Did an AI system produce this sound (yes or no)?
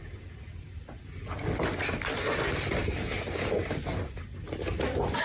no